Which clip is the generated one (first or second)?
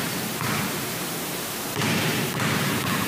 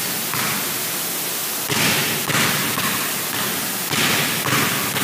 first